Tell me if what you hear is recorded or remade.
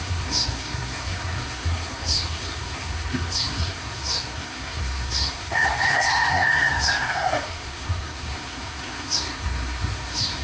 remade